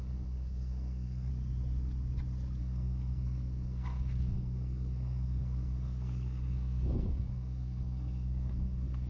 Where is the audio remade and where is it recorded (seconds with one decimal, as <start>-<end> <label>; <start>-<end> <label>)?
0.0-1.3 remade; 1.3-2.6 recorded; 2.6-9.1 remade